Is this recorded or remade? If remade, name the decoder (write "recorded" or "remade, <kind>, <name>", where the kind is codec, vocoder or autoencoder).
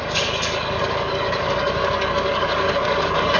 remade, codec, DAC